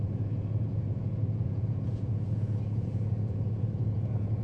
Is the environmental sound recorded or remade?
remade